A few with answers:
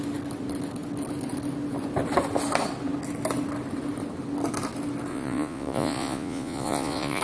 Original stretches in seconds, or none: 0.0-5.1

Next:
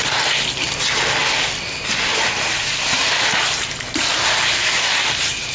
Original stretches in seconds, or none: 0.0-5.5

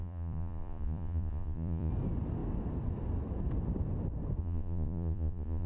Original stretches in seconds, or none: 1.9-4.4

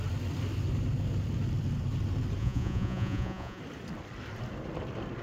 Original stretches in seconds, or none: 0.0-2.4; 3.6-5.2

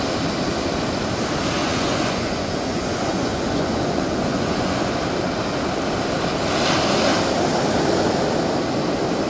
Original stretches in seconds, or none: 0.0-1.6; 4.9-9.3